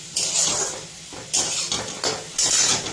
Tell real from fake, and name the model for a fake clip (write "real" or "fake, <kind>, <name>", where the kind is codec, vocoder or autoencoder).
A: real